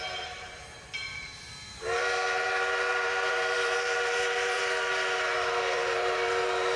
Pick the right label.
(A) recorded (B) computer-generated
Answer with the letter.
B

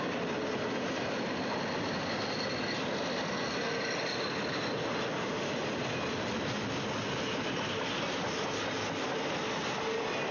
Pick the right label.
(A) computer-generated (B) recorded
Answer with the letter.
B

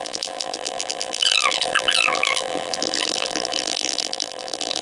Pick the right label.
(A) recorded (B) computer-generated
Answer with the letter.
B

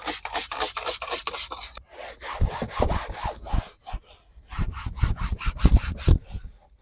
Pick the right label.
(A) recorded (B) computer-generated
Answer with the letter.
B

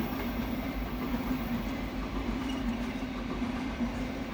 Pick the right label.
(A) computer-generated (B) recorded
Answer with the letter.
A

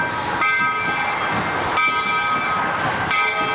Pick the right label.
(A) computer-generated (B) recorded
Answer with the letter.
B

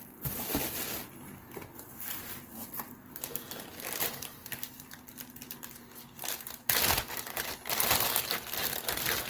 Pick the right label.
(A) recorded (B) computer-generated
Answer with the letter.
A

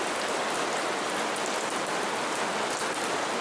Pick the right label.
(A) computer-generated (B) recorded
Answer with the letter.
B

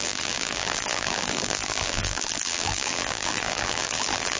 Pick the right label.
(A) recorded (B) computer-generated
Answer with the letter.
B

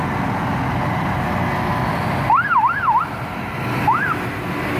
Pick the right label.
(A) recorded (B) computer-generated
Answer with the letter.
A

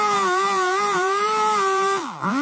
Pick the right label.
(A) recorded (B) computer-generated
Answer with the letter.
B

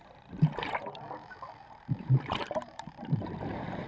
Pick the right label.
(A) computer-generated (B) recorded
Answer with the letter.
A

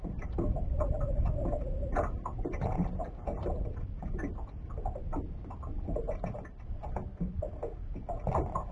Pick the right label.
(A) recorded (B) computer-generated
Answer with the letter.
A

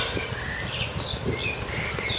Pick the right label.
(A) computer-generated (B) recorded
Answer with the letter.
B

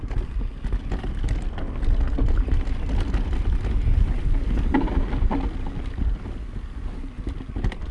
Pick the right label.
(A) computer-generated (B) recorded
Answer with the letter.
B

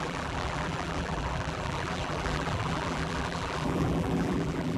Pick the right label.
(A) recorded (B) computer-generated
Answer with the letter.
B